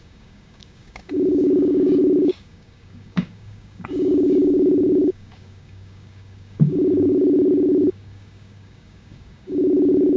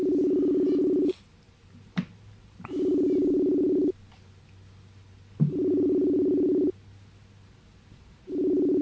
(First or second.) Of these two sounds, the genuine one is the second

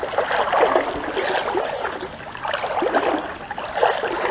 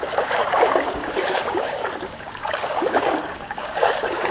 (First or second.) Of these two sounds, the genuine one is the first